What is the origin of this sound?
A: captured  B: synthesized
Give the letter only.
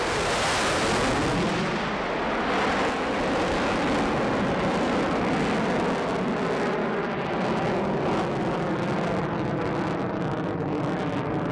A